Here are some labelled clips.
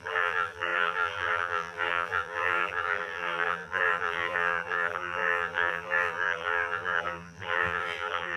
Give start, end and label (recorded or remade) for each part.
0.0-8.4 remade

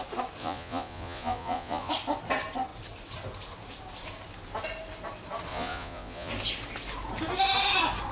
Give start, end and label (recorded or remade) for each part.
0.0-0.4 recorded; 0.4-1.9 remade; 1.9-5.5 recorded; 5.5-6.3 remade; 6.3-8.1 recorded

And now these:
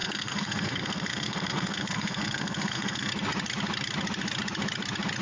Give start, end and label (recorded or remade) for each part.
0.0-3.1 remade; 3.1-5.2 recorded

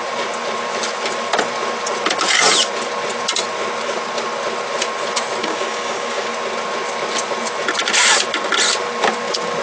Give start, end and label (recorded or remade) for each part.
0.0-5.4 recorded; 5.4-6.3 remade; 6.3-9.6 recorded

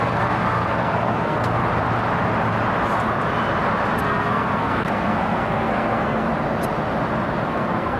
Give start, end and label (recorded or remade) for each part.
0.0-1.6 remade; 1.6-4.0 recorded; 4.0-6.3 remade; 6.3-7.5 recorded; 7.5-8.0 remade